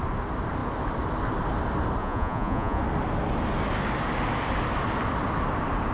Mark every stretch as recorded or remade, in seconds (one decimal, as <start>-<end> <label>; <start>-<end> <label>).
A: 0.0-2.0 recorded; 2.0-2.8 remade; 2.8-5.9 recorded